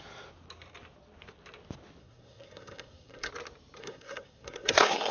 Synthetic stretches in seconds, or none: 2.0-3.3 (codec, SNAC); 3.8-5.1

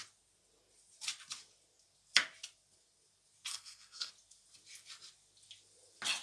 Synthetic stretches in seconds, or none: 3.5-4.1 (codec, SNAC)

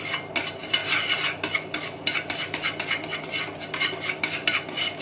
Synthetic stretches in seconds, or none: none

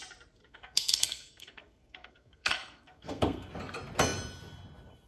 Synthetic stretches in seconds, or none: 0.4-3.5 (codec, SNAC)

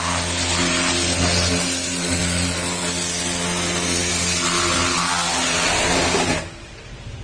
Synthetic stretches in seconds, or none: none

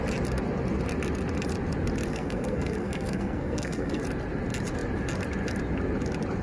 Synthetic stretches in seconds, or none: 2.1-4.0 (codec, SNAC)